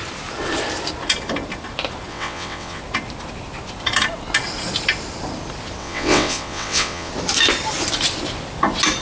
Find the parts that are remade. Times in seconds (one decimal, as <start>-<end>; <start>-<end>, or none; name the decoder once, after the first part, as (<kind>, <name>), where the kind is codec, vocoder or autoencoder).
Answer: 2.1-2.8 (vocoder, WaveNeXt); 5.8-7.1